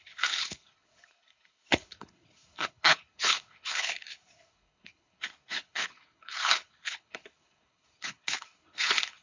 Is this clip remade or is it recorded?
remade